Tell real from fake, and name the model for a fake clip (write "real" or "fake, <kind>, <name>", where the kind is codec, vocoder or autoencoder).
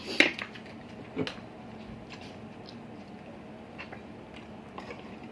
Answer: real